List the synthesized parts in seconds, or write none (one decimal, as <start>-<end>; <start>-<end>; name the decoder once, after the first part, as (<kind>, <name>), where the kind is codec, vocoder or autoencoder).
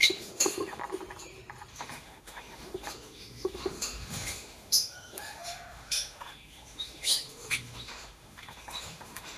0.0-0.8 (autoencoder, DAC-VAE); 1.7-9.4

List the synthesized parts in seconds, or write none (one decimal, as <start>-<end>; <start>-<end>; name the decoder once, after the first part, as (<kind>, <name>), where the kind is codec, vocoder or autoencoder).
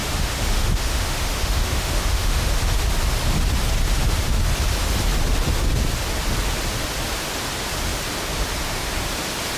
0.0-2.5 (autoencoder, DAC-VAE)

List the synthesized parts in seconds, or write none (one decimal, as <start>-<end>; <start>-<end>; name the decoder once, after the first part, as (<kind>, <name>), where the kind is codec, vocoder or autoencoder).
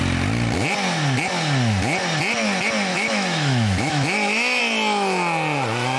2.9-4.6 (autoencoder, DAC-VAE)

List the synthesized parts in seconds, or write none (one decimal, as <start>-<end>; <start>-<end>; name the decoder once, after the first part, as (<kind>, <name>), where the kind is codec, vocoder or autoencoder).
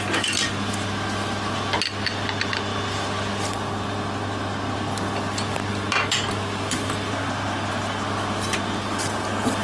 none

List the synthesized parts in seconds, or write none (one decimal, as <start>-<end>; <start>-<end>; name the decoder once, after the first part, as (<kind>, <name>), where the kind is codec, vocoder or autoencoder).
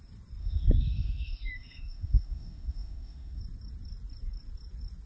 0.4-3.4 (autoencoder, DAC-VAE)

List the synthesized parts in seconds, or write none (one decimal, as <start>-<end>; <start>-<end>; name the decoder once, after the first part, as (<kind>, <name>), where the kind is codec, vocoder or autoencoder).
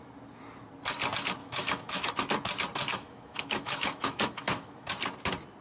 1.4-2.1 (autoencoder, DAC-VAE); 2.9-4.9